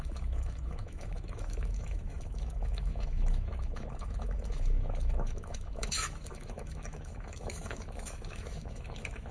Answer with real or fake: fake